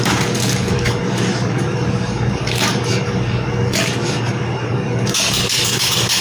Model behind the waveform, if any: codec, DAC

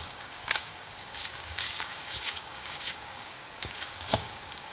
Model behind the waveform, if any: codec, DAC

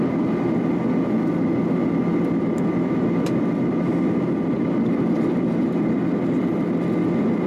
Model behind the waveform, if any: none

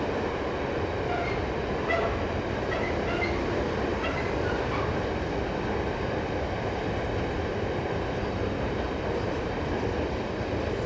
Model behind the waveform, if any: none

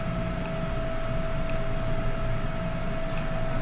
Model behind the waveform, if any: none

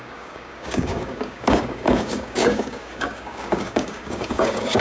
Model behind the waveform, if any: codec, DAC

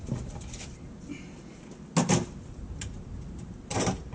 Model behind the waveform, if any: none